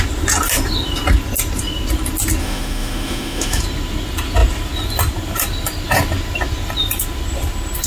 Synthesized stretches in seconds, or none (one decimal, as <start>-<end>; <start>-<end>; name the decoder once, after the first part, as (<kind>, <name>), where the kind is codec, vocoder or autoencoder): 2.4-3.6 (autoencoder, DAC-VAE)